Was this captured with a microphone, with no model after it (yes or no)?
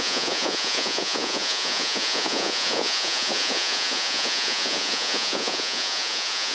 no